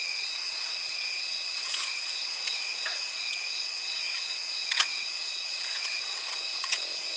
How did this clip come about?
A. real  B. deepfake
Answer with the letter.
B